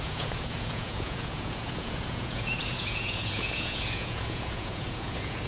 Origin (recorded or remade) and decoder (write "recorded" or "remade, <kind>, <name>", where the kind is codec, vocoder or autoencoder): remade, vocoder, Vocos